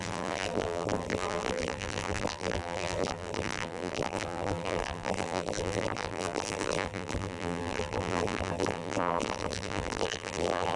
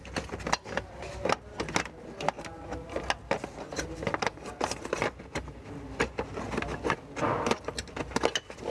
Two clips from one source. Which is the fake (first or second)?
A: first